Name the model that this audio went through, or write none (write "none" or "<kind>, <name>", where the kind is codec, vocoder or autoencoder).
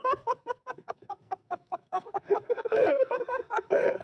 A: codec, SNAC